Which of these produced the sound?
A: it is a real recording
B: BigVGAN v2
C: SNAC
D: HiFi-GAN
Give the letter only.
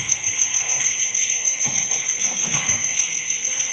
C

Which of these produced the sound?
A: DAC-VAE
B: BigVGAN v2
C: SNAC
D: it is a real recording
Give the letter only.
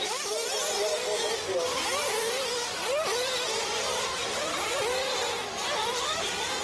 D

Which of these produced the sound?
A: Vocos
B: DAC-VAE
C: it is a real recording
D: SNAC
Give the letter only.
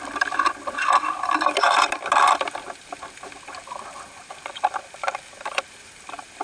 C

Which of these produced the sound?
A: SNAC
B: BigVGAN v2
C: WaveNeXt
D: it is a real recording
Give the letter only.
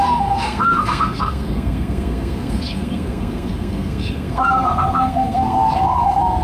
A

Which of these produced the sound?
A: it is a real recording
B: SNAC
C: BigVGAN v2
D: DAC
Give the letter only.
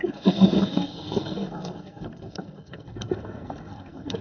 B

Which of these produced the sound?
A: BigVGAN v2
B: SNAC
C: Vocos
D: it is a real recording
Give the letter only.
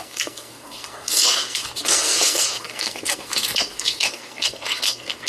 B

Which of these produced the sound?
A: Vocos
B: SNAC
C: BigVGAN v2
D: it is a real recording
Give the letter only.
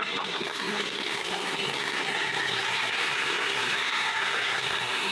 B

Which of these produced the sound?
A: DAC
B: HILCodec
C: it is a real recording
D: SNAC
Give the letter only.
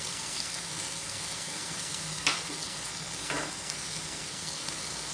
D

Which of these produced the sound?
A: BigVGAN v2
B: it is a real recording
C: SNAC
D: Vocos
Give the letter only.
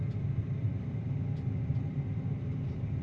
B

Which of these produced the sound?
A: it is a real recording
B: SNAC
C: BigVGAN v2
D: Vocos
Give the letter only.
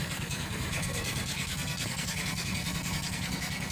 B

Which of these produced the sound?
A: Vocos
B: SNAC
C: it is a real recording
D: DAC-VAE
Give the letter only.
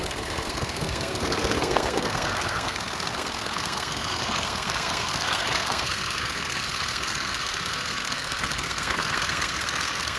B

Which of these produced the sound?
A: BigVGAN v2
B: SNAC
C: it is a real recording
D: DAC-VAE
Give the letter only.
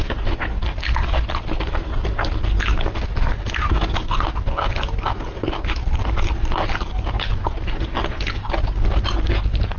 C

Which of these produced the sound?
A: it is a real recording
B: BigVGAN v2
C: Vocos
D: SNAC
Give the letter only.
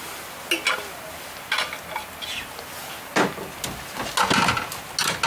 A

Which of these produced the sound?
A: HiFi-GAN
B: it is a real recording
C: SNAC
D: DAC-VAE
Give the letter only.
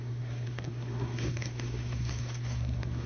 C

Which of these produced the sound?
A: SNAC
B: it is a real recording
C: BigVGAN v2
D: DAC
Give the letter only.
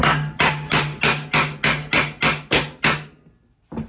B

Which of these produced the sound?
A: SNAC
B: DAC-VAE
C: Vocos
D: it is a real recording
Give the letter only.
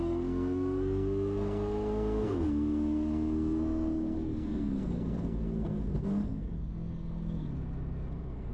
A